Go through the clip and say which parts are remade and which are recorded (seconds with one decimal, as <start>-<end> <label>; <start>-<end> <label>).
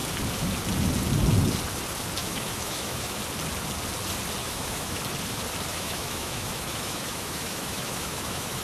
0.0-2.2 recorded; 2.2-3.2 remade; 3.2-4.4 recorded; 4.4-5.0 remade; 5.0-5.7 recorded; 5.7-8.6 remade